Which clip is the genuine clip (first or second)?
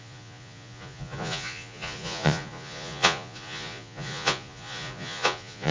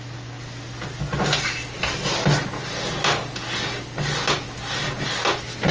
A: second